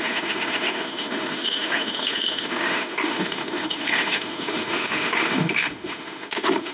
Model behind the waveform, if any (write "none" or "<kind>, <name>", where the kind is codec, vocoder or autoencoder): autoencoder, DAC-VAE